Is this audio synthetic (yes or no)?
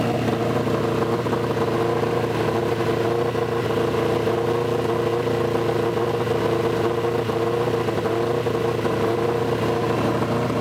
no